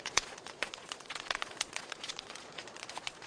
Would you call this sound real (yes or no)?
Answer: no